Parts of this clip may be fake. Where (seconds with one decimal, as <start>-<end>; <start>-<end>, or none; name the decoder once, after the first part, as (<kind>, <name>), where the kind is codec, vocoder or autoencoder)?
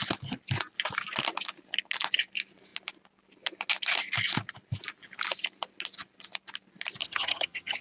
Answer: 7.0-7.8 (vocoder, HiFi-GAN)